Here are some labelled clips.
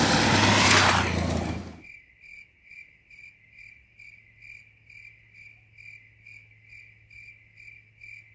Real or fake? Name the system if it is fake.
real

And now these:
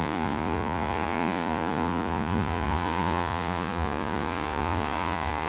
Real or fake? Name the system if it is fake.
fake, vocoder, Vocos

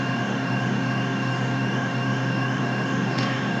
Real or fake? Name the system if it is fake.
fake, autoencoder, DAC-VAE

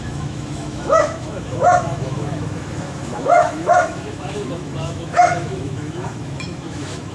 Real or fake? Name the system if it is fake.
fake, autoencoder, DAC-VAE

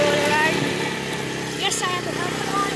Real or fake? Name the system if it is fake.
real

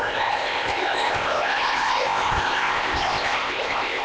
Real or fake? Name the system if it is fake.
fake, codec, ZipCodec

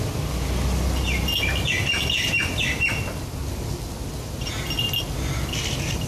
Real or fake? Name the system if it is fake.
real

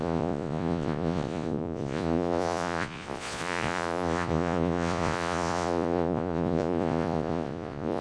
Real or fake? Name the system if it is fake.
fake, vocoder, Vocos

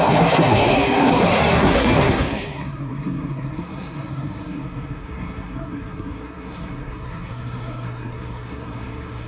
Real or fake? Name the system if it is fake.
fake, codec, SNAC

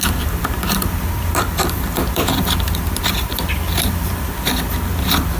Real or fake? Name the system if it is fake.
fake, vocoder, BigVGAN v2